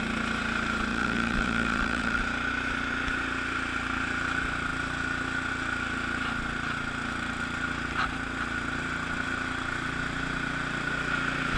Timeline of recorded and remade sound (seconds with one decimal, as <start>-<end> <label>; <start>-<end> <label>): 0.0-0.9 recorded; 0.9-2.2 remade; 2.2-11.6 recorded